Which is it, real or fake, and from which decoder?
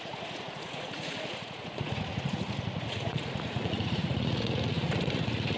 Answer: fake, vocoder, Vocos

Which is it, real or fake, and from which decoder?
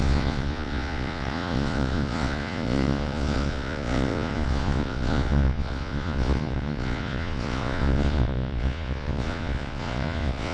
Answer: fake, vocoder, Vocos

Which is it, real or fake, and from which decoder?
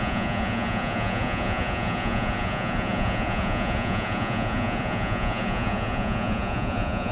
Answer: fake, vocoder, Vocos